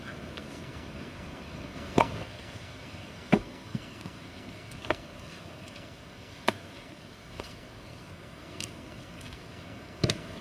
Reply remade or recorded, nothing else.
remade